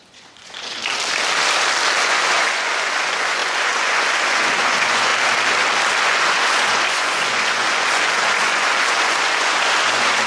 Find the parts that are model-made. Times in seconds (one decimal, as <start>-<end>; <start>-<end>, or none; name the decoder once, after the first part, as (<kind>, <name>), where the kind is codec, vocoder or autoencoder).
0.0-0.8 (vocoder, Vocos); 2.0-5.1; 6.0-10.3

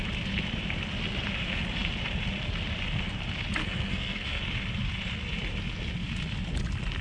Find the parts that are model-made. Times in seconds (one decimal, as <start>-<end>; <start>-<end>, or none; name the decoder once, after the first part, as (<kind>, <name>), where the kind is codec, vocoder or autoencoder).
3.6-4.4 (codec, SNAC)

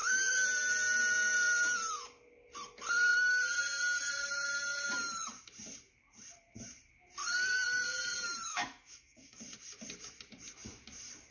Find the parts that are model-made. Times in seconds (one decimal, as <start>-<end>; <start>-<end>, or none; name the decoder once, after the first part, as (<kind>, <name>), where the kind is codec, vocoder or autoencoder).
8.5-9.4 (autoencoder, DAC-VAE)

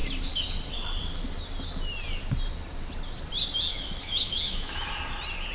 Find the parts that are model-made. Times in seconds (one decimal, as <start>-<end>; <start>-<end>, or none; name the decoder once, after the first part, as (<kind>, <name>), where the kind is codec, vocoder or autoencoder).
3.7-4.9 (autoencoder, DAC-VAE)

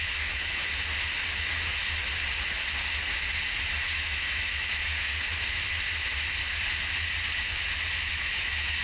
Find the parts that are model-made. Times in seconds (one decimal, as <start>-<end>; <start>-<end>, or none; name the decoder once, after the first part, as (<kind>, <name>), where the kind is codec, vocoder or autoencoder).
0.0-0.6 (autoencoder, DAC-VAE); 3.6-5.1; 8.1-8.8

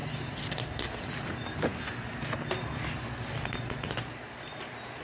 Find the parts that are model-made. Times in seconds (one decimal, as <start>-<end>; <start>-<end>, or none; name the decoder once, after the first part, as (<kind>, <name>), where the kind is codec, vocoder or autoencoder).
0.0-1.7 (vocoder, BigVGAN v2); 3.5-5.0

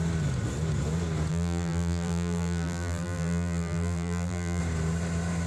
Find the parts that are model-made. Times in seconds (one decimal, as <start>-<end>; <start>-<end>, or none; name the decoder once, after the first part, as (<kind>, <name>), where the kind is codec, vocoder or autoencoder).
1.3-4.6 (vocoder, BigVGAN v2)